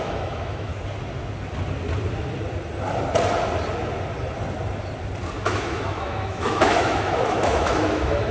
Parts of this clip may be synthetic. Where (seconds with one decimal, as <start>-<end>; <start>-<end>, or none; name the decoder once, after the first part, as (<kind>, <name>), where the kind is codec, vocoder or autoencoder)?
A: 0.0-0.7 (autoencoder, DAC-VAE); 5.4-8.3